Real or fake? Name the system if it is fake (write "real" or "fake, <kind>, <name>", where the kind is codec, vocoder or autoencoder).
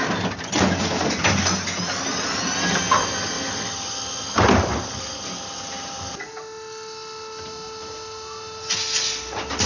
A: real